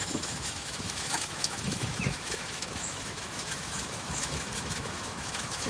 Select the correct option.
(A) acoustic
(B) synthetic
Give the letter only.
B